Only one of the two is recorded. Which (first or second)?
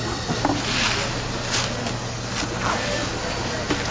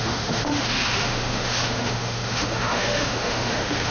first